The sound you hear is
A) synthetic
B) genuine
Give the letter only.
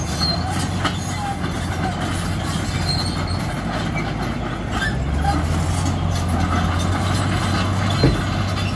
B